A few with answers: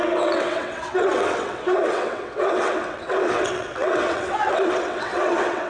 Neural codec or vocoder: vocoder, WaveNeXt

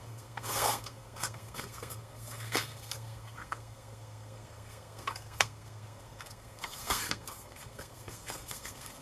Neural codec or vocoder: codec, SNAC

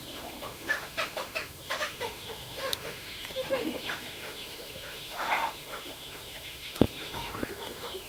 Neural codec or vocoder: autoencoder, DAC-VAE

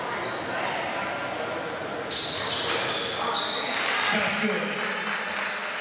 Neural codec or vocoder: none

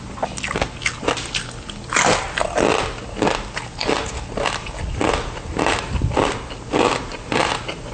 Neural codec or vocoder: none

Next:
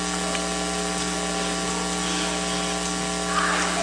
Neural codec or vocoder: none